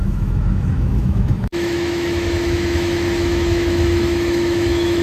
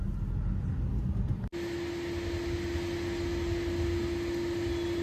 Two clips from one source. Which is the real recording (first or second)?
second